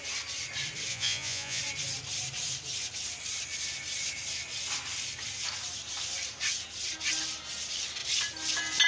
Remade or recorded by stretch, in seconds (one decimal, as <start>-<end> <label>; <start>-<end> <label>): 0.0-0.9 recorded; 0.9-1.6 remade; 1.6-8.9 recorded